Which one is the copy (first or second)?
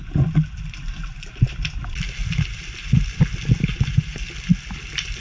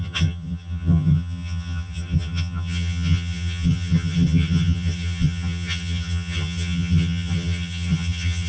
second